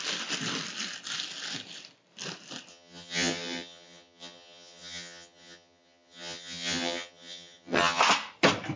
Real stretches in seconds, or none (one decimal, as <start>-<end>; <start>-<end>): 0.0-2.7; 8.0-8.8